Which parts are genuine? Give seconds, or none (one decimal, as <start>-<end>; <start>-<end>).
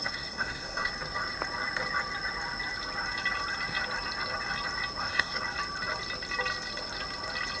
0.9-5.0; 5.4-7.6